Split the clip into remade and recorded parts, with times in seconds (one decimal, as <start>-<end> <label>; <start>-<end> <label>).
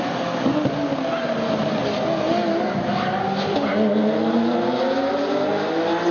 0.0-6.1 recorded